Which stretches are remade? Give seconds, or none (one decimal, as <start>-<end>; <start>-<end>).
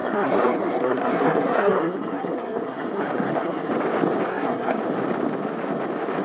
0.0-3.7; 4.3-4.8